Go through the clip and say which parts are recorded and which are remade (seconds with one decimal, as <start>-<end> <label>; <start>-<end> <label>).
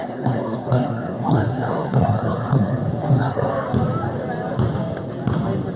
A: 0.0-3.5 remade; 3.5-5.8 recorded